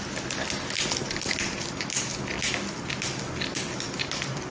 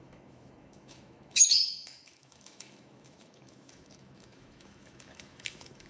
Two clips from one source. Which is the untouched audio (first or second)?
first